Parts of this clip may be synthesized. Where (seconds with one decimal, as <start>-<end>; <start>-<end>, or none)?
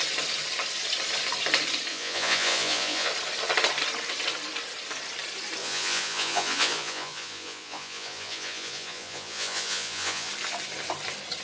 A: 1.9-3.1; 5.6-10.3